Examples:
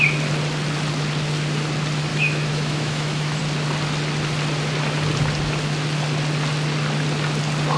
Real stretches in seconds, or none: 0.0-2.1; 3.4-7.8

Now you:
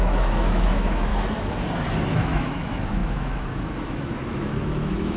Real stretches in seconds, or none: 1.1-2.1

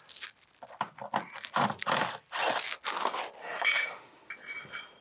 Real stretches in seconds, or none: 0.0-3.4; 4.3-5.0

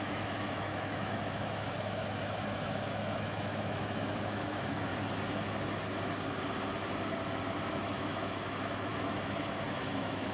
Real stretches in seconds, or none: 4.9-7.7

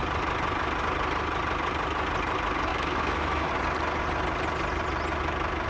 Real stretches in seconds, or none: 0.0-2.7; 3.5-5.7

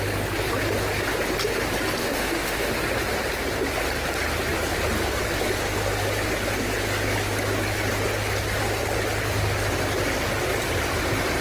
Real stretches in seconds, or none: 0.0-2.0; 2.7-11.4

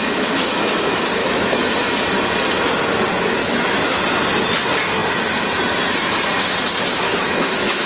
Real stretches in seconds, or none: 0.0-1.2; 1.7-3.4; 4.0-7.1

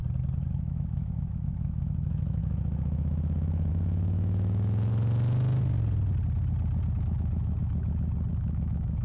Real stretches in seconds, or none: 0.0-0.5; 4.9-7.0; 7.6-8.3